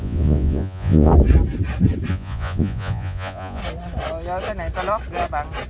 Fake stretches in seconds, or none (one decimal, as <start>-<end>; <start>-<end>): 0.0-1.1; 2.1-3.6